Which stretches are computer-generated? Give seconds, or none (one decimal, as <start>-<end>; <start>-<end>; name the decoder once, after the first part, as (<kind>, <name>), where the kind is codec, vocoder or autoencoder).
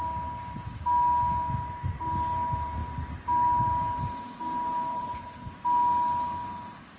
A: 4.9-5.5 (codec, HILCodec)